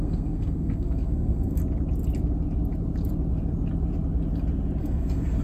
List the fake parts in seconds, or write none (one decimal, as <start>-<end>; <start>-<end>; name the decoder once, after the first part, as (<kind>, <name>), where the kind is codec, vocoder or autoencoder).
0.0-1.6 (codec, SNAC); 4.8-5.4